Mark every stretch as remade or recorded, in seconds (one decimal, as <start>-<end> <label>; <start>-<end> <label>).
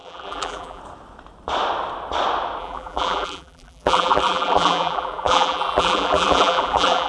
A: 0.0-0.8 remade; 0.8-2.6 recorded; 2.6-7.1 remade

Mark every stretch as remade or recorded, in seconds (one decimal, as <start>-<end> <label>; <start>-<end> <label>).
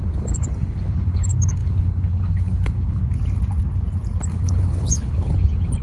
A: 0.0-3.0 remade; 3.0-4.3 recorded; 4.3-5.8 remade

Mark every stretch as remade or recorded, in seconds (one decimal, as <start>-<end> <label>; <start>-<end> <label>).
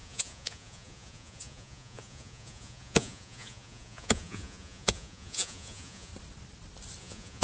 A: 0.0-6.1 remade; 6.1-7.0 recorded; 7.0-7.4 remade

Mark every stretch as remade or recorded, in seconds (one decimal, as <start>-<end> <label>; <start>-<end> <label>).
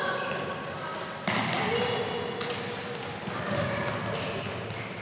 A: 0.0-5.0 recorded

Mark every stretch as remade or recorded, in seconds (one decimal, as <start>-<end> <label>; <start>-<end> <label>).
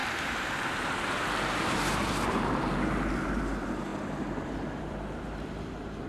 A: 0.0-6.1 remade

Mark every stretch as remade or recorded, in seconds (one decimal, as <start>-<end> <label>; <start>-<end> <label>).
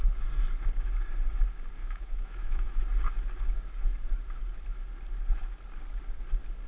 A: 0.0-1.8 recorded; 1.8-2.8 remade; 2.8-6.7 recorded